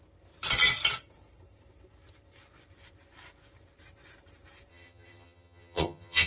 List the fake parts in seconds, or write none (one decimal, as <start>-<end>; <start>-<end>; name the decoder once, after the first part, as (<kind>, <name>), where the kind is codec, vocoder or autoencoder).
4.7-6.3 (vocoder, HiFi-GAN)